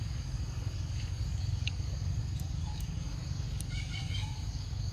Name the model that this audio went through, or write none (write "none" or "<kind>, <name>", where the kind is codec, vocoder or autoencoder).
codec, DAC